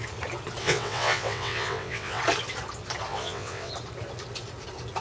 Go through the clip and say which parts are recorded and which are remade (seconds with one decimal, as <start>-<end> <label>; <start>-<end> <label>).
0.0-0.6 recorded; 0.6-2.2 remade; 2.2-3.1 recorded; 3.1-3.7 remade; 3.7-5.0 recorded